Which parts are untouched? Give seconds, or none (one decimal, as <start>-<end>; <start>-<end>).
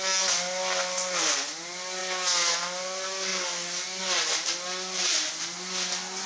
0.0-6.3